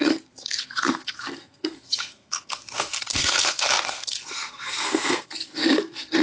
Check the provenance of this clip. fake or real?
fake